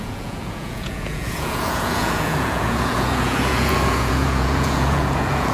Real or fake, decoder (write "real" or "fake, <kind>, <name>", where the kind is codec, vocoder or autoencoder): fake, vocoder, Vocos